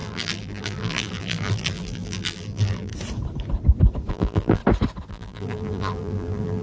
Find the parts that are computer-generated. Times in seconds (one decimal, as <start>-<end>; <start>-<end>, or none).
0.0-2.9; 4.1-4.6; 5.1-6.6